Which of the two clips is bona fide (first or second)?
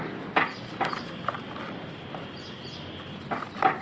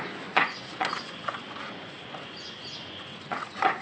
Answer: first